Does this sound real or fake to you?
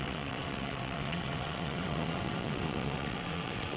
fake